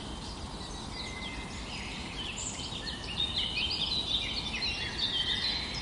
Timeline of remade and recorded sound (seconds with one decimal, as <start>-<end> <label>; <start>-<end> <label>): 0.0-1.9 recorded; 1.9-3.2 remade; 3.2-5.8 recorded